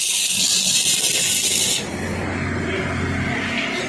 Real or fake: real